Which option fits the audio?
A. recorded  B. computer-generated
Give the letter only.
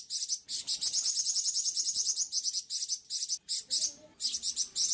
A